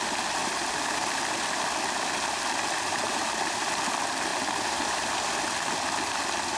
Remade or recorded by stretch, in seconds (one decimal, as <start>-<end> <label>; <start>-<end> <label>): 0.0-0.4 recorded; 0.4-3.4 remade; 3.4-4.3 recorded; 4.3-5.3 remade; 5.3-6.6 recorded